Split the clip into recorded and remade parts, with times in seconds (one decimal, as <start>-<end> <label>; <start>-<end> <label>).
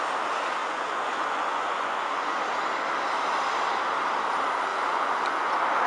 0.0-0.6 recorded; 0.6-2.4 remade; 2.4-4.7 recorded; 4.7-5.5 remade; 5.5-5.9 recorded